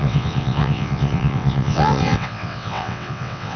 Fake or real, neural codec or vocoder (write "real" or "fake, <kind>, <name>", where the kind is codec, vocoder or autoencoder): fake, vocoder, WaveNeXt